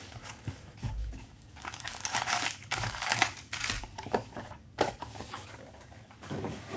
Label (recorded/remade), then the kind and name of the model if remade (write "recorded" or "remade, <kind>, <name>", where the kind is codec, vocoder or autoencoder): remade, codec, DAC